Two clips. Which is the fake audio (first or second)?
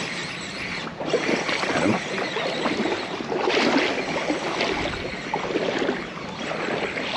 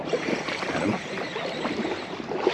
second